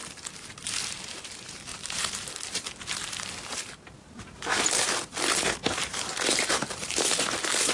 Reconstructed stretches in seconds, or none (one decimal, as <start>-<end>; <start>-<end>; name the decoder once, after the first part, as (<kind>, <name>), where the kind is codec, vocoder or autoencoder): 0.0-7.7 (vocoder, BigVGAN v2)